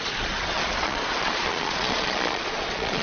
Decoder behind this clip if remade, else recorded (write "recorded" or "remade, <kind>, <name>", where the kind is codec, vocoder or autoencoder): remade, vocoder, Vocos